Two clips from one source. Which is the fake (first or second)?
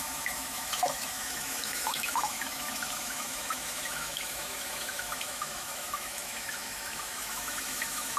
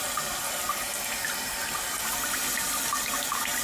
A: first